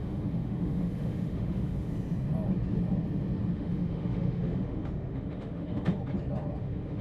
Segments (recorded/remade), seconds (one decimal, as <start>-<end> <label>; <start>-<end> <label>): 0.0-1.9 remade; 1.9-3.5 recorded; 3.5-6.0 remade; 6.0-6.6 recorded; 6.6-7.0 remade